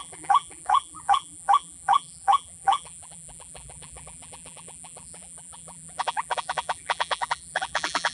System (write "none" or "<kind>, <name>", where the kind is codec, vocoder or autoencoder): vocoder, BigVGAN v2